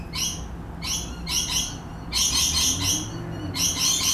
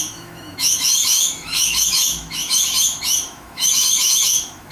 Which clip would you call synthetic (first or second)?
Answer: second